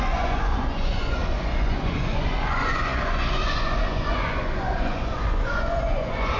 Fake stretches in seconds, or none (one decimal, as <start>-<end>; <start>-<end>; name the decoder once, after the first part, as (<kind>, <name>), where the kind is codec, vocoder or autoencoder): 0.0-6.4 (vocoder, Vocos)